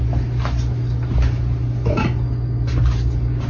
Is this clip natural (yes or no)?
yes